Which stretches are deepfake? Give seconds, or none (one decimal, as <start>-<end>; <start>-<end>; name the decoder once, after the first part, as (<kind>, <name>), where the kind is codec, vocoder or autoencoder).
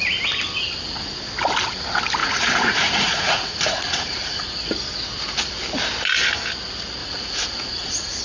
2.2-4.6 (vocoder, Vocos); 7.0-8.2